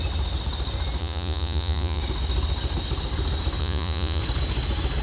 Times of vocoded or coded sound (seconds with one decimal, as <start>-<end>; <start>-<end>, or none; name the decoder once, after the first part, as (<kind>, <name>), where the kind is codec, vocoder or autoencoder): 1.0-2.0 (vocoder, Vocos); 3.6-4.2

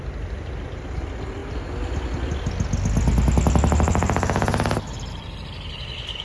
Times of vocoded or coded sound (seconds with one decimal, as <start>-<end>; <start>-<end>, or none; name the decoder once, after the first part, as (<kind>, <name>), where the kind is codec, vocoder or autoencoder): none

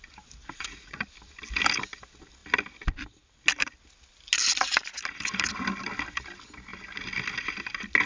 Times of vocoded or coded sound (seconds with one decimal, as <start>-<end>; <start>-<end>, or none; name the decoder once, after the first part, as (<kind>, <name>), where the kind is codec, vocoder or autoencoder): 0.4-1.1 (vocoder, Vocos)

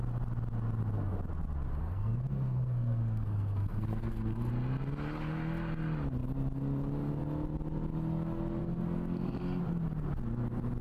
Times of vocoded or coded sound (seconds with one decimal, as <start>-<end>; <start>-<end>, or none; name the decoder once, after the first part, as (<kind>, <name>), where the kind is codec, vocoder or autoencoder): 1.8-4.5 (codec, SNAC); 8.6-9.6